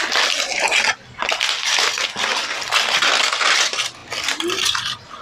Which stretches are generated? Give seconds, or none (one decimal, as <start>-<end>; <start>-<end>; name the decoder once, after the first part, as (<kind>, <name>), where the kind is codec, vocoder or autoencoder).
none